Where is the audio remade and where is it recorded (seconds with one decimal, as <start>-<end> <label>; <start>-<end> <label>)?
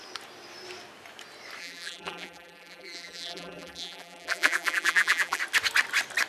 0.0-1.6 recorded; 1.6-5.4 remade; 5.4-6.3 recorded